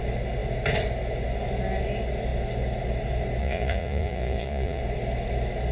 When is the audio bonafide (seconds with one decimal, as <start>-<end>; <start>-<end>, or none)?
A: 0.0-3.4; 4.8-5.7